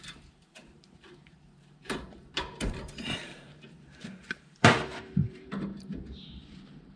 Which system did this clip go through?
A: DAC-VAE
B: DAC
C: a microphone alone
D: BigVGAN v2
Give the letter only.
D